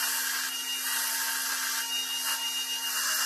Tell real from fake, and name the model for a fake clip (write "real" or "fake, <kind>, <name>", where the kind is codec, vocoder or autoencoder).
real